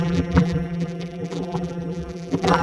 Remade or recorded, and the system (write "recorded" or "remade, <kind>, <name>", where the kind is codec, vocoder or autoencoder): remade, vocoder, BigVGAN v2